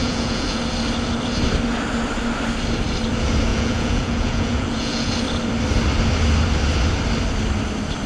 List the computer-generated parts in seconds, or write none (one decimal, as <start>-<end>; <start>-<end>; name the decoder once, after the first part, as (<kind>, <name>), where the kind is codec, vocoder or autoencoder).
0.0-0.6 (vocoder, Vocos); 3.5-5.1